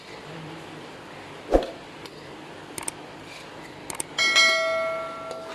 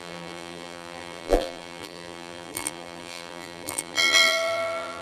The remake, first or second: second